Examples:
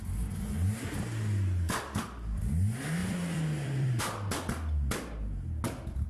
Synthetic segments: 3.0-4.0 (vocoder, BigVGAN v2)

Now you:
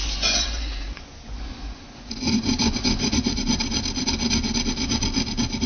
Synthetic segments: 0.0-3.4 (vocoder, Vocos)